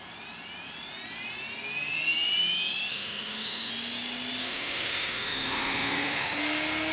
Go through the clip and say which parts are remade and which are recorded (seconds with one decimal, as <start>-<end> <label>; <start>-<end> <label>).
0.0-2.9 recorded; 2.9-3.7 remade; 3.7-4.4 recorded; 4.4-6.4 remade; 6.4-6.9 recorded